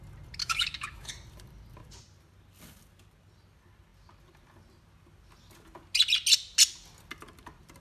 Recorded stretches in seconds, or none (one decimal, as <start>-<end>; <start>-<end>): 0.0-0.4; 1.1-7.8

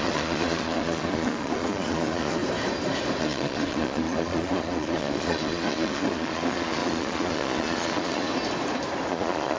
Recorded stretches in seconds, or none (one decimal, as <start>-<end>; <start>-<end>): 2.4-3.2; 8.3-9.1

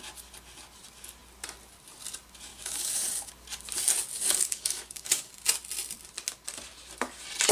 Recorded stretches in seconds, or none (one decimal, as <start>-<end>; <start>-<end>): 0.0-2.5; 3.3-4.1; 5.3-7.5

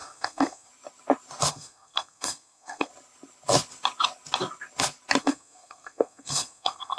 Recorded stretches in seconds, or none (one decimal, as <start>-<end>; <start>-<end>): 0.7-1.5; 2.9-5.2